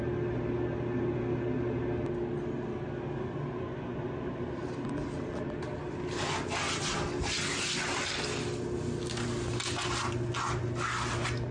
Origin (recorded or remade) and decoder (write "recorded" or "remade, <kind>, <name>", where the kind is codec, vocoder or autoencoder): recorded